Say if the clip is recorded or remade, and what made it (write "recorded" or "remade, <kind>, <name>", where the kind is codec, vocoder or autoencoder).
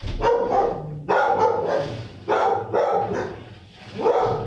recorded